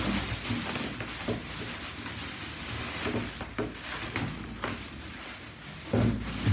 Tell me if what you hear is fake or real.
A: real